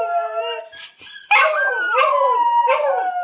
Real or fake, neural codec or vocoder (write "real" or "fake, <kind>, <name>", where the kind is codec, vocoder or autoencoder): fake, vocoder, BigVGAN v2